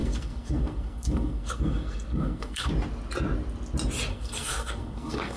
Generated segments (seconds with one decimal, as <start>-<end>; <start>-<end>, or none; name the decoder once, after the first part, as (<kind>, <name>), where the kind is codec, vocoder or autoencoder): 0.0-2.7 (codec, SNAC); 4.1-5.4